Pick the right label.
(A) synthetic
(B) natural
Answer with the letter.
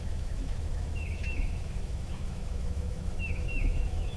A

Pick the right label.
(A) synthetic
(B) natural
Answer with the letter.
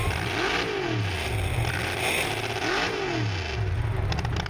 B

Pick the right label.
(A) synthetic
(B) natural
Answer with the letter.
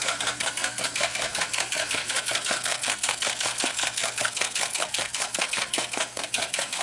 A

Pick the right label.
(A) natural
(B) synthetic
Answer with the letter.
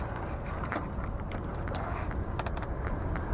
A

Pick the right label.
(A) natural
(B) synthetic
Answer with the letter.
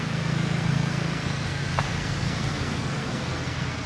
B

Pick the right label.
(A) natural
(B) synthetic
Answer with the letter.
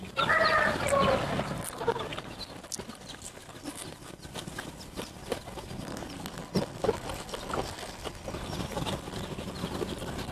A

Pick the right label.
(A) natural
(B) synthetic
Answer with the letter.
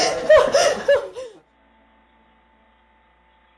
A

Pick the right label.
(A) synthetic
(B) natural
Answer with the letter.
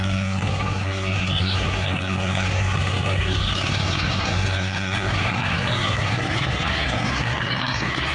A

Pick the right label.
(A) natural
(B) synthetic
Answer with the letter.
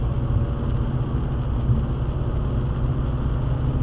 A